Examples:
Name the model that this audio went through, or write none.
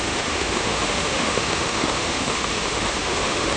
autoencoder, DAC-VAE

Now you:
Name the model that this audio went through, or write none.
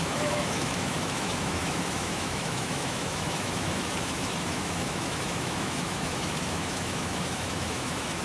autoencoder, DAC-VAE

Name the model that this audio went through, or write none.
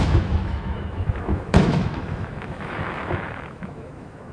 autoencoder, DAC-VAE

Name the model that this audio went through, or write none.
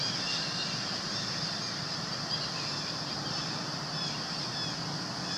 none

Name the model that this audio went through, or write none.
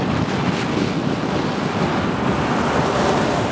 none